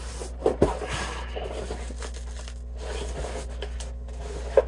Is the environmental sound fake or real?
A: real